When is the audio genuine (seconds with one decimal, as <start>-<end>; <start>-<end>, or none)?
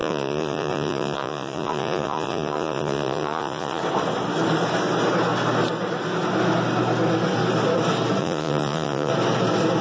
3.8-8.2; 9.1-9.8